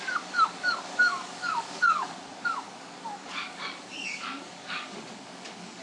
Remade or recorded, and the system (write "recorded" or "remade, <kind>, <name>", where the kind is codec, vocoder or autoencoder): remade, codec, DAC